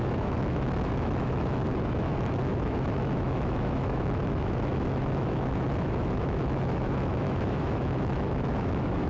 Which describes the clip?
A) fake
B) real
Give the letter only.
A